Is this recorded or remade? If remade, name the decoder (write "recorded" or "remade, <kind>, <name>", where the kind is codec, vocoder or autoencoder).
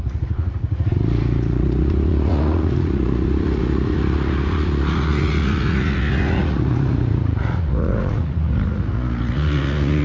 remade, vocoder, Vocos